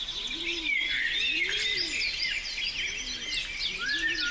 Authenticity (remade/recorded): recorded